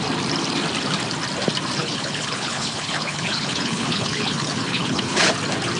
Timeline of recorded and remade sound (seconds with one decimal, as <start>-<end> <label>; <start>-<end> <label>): 0.0-1.8 recorded; 1.8-5.3 remade; 5.3-5.8 recorded